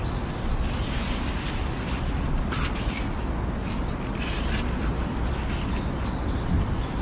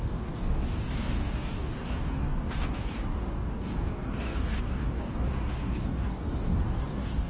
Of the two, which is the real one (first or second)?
first